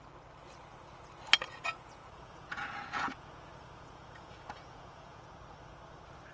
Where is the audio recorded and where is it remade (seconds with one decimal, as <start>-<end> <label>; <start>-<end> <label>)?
0.0-1.4 recorded; 1.4-5.2 remade; 5.2-6.3 recorded